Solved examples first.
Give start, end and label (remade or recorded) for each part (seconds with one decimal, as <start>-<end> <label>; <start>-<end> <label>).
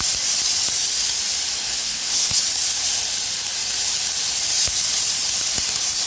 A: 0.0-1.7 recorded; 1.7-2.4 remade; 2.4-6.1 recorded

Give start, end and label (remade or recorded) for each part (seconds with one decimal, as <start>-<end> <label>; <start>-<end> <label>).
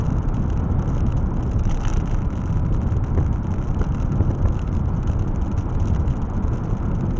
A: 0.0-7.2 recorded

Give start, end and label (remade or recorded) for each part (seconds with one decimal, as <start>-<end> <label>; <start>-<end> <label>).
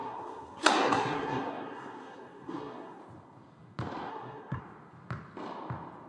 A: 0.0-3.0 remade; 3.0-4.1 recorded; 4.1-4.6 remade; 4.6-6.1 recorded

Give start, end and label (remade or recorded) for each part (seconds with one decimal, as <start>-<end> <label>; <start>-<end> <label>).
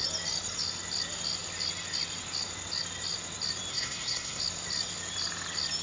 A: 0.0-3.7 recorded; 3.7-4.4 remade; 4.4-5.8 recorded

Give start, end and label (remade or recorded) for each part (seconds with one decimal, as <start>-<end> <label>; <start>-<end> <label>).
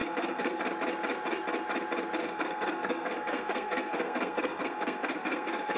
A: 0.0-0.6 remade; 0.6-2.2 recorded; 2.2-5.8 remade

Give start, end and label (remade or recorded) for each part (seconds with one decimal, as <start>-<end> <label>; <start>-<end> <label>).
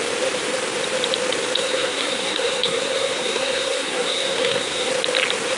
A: 0.0-1.6 recorded; 1.6-4.9 remade; 4.9-5.6 recorded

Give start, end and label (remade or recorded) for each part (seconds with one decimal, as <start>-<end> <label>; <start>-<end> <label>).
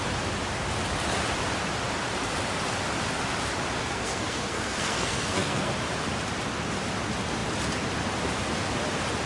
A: 0.0-3.8 recorded; 3.8-5.7 remade; 5.7-9.3 recorded